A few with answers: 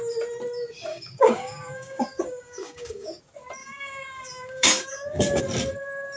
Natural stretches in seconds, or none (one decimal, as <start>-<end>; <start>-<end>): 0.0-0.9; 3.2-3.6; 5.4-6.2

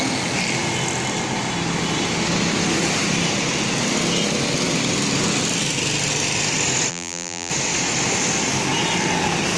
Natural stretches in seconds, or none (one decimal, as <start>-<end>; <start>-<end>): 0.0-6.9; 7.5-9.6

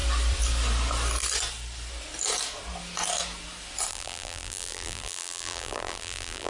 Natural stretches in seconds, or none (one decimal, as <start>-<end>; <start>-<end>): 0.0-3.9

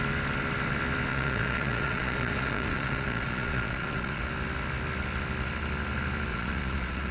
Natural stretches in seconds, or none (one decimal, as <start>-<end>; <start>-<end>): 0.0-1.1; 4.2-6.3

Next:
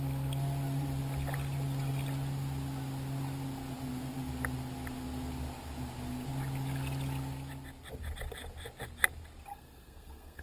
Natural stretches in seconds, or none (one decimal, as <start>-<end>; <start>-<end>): 0.0-9.5

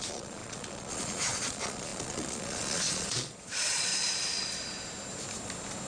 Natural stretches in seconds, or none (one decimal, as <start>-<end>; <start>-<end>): 3.9-5.9

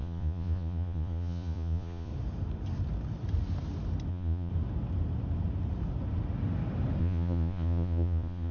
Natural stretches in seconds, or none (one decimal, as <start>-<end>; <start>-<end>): 2.1-4.1; 4.5-7.0

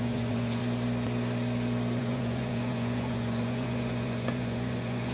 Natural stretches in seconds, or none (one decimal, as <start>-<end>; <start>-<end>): 0.6-2.0